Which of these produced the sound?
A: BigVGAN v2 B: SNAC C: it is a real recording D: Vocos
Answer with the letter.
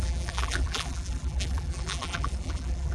A